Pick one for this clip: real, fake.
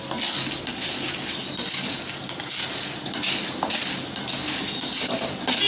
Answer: real